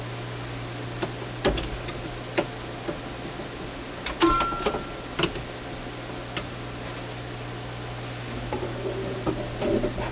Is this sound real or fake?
real